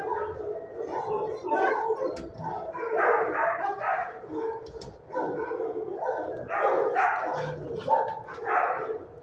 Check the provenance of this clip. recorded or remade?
recorded